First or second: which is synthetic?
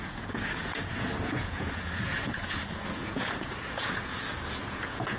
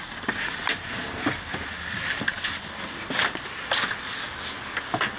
first